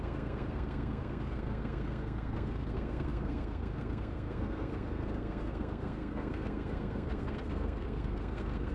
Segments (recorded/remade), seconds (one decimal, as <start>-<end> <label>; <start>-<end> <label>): 0.0-8.7 remade